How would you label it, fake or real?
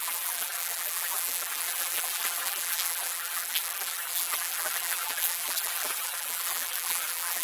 fake